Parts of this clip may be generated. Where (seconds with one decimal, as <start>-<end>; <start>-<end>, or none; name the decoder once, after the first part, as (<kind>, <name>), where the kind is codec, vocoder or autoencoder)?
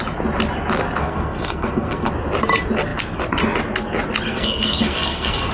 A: 1.0-2.1 (codec, SNAC); 4.3-5.5